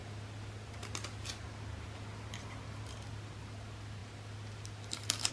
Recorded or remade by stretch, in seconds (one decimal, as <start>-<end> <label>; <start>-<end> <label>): 0.0-5.3 recorded